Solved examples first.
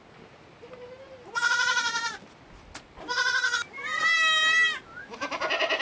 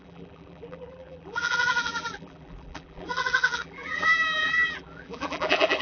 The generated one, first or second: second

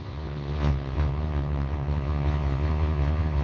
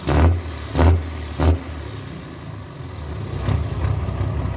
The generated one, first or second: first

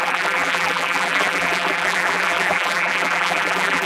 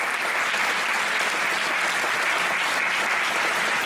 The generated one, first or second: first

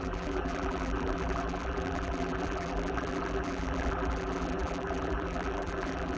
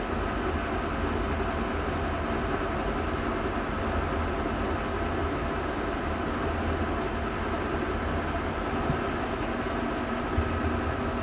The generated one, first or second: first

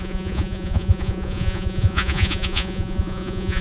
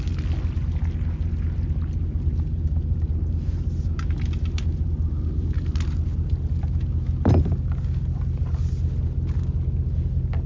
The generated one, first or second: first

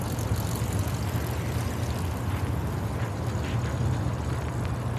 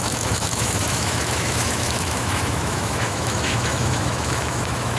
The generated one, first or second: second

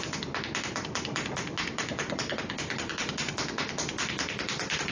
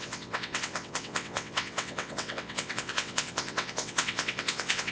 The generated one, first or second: second